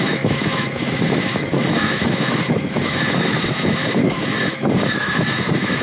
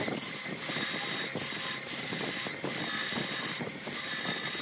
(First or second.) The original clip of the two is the second